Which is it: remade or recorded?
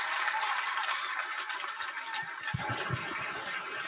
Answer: recorded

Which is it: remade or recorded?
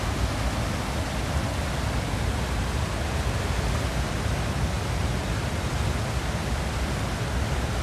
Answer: recorded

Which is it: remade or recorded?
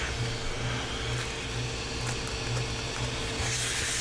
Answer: recorded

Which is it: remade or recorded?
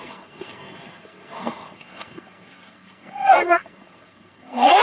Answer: remade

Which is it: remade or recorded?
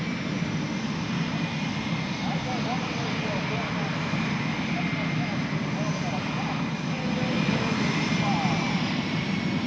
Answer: recorded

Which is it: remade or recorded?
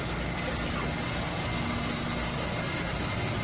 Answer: recorded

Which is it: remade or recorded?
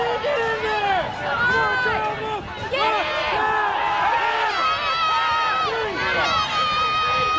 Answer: recorded